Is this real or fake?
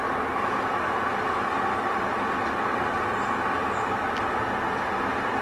real